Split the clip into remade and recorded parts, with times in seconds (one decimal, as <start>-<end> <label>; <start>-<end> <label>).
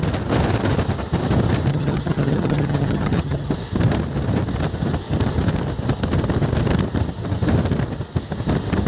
0.0-1.7 recorded; 1.7-3.5 remade; 3.5-8.9 recorded